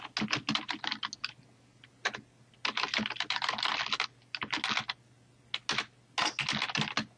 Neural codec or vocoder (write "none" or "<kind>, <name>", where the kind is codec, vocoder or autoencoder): none